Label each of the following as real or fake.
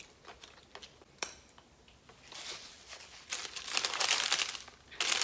real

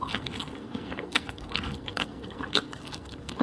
fake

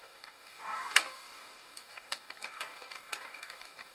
fake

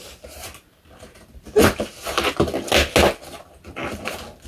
real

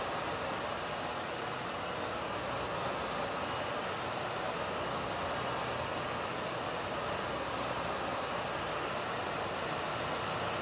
real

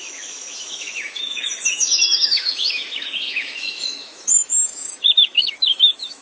fake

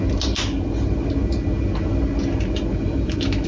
real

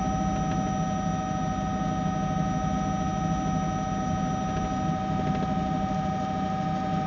real